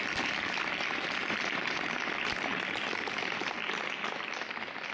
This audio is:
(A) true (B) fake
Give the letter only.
A